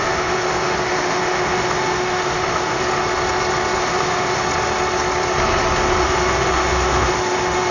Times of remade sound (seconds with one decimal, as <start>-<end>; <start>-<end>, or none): 0.0-2.8; 3.8-4.4; 6.0-7.7